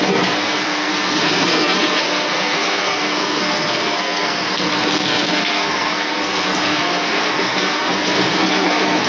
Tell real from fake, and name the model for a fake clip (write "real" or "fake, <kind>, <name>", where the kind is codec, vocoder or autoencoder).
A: fake, codec, SNAC